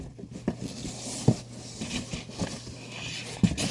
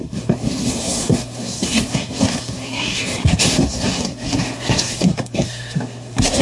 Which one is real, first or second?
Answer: first